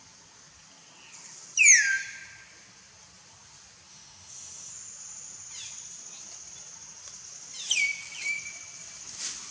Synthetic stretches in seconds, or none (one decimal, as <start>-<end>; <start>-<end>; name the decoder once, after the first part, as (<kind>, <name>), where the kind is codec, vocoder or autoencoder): 3.9-4.7 (autoencoder, DAC-VAE)